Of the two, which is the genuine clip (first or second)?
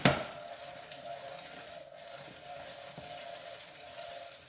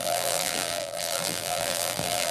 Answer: first